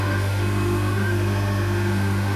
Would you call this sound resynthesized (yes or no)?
yes